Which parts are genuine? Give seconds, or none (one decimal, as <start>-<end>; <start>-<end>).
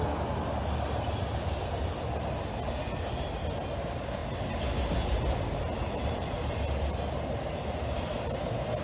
0.0-8.8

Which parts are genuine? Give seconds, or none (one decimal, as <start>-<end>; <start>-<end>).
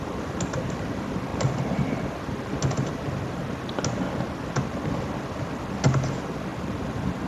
0.0-7.3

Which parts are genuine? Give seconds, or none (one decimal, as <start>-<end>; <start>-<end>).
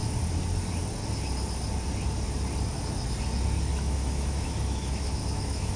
0.0-3.7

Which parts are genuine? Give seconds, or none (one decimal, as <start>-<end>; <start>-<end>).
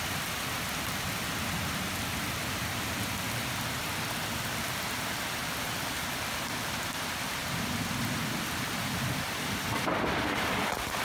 0.0-5.4; 6.9-11.0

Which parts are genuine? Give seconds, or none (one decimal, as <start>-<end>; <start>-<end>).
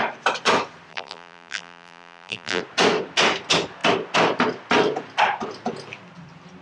0.0-0.9; 2.6-6.6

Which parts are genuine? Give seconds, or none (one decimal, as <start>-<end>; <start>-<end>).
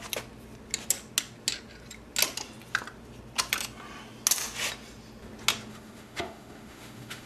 0.0-5.7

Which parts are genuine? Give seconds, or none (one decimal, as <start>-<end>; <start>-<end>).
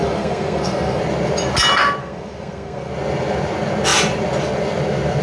1.0-2.0; 2.9-5.2